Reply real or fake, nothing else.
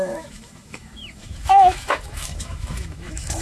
fake